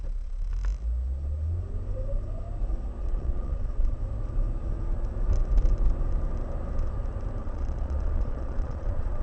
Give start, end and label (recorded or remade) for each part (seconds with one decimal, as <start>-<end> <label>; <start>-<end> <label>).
0.0-0.5 remade; 0.5-3.0 recorded; 3.0-4.0 remade; 4.0-7.4 recorded; 7.4-9.2 remade